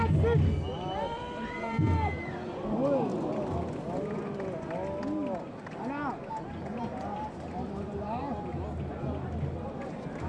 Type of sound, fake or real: real